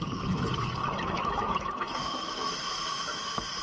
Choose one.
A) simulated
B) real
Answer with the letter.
A